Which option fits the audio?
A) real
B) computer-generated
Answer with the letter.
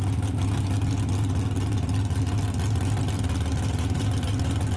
A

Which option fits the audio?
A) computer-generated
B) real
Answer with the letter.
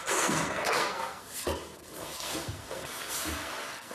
A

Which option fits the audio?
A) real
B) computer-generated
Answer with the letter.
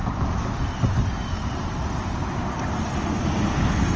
A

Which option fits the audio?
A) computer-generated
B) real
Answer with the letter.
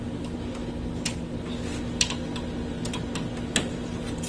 B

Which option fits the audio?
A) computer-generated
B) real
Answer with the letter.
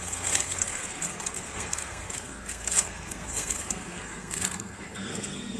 A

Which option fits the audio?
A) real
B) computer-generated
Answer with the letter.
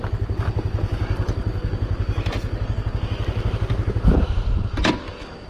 A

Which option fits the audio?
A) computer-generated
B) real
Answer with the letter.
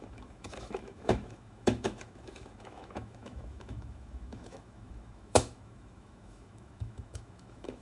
A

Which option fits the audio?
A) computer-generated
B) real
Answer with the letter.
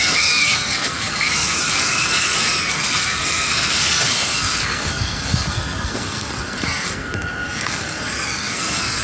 A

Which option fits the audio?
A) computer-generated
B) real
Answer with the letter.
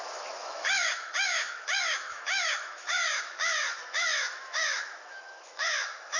A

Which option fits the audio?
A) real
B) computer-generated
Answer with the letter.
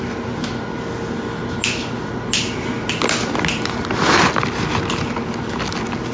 A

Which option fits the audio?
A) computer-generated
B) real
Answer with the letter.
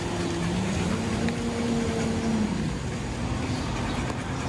B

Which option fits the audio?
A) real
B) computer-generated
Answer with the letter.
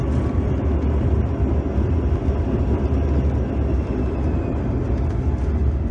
A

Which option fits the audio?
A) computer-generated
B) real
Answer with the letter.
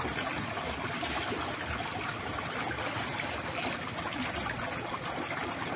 B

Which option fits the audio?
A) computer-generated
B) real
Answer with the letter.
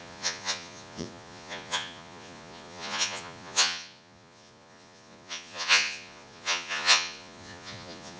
A